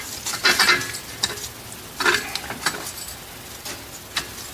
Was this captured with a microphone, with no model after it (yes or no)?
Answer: yes